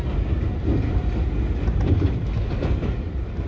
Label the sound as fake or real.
real